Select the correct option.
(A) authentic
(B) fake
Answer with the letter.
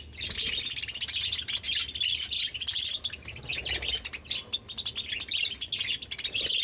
A